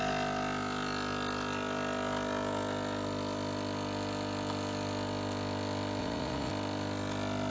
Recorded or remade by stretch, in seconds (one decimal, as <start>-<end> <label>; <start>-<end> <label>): 0.0-6.0 recorded; 6.0-6.5 remade; 6.5-7.5 recorded